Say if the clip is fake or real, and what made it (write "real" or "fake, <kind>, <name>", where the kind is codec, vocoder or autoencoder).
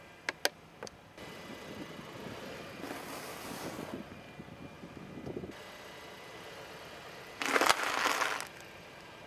real